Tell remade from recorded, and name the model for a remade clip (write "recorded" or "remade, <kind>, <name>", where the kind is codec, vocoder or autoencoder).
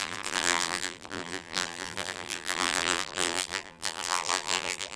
remade, vocoder, BigVGAN v2